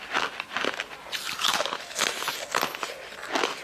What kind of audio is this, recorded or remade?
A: recorded